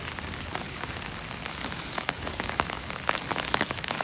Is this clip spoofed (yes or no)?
yes